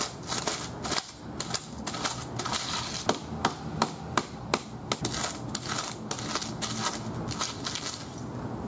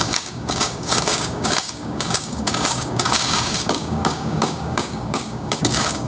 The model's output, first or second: second